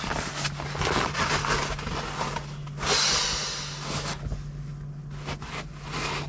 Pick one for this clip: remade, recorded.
recorded